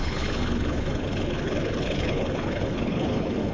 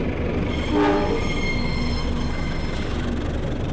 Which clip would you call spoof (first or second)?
first